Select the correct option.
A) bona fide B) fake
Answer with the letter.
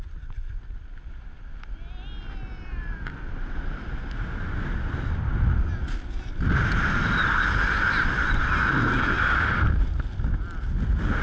A